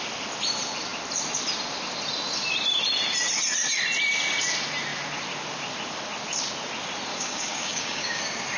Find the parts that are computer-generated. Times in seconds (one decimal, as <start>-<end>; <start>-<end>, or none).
7.1-8.2